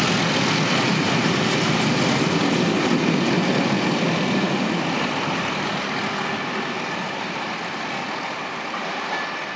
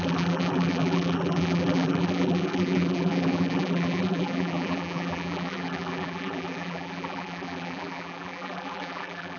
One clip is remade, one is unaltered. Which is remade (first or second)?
second